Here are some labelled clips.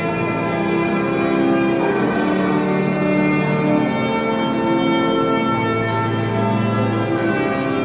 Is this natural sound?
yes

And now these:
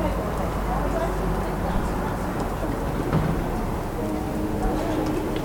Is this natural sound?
yes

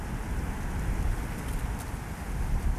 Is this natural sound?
yes